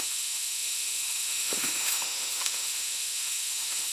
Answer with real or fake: fake